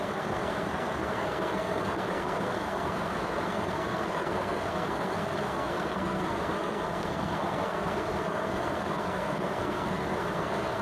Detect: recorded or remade remade